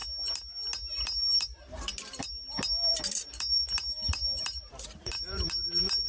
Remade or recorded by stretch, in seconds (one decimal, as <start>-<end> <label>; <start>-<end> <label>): 0.0-0.9 recorded; 0.9-6.1 remade